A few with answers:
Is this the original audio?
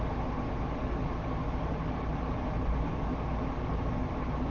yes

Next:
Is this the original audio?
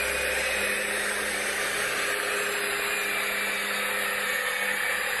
yes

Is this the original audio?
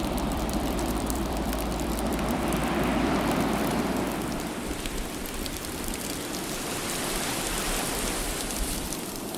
no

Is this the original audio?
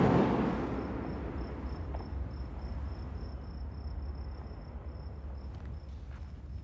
yes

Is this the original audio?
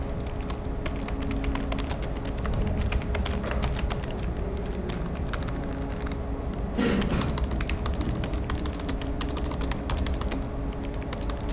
yes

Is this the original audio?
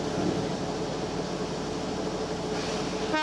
yes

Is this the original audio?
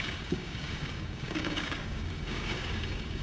no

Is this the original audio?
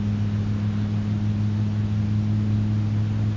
yes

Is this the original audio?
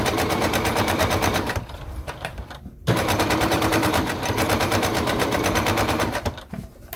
no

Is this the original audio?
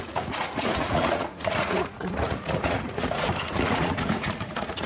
no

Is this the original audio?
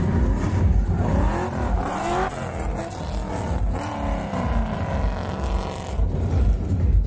yes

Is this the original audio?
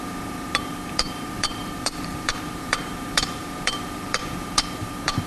no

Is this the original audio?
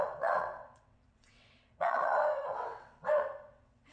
no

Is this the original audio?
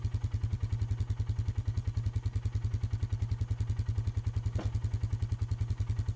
yes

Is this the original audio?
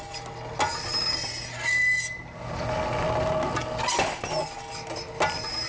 yes